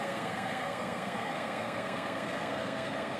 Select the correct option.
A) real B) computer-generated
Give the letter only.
B